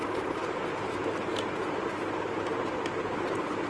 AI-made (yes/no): no